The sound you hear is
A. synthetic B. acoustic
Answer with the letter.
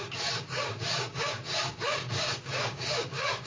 A